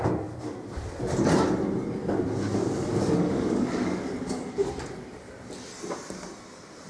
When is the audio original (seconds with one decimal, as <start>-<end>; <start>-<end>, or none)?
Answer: 0.0-2.0; 4.7-6.9